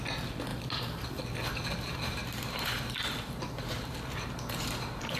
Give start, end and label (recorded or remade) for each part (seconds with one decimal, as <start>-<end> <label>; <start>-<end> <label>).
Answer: 0.0-0.5 recorded; 0.5-1.2 remade; 1.2-1.9 recorded; 1.9-5.2 remade